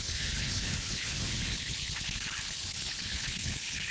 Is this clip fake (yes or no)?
yes